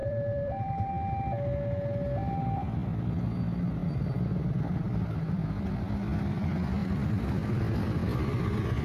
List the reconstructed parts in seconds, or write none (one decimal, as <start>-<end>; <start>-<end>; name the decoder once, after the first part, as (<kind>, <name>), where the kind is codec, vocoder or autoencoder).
0.0-0.9 (vocoder, BigVGAN v2)